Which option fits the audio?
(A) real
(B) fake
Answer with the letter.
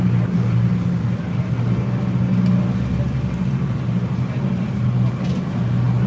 A